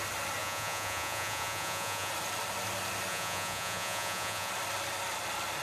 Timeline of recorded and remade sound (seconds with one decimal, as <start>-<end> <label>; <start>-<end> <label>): 0.0-0.4 recorded; 0.4-2.1 remade; 2.1-3.1 recorded; 3.1-4.5 remade; 4.5-5.6 recorded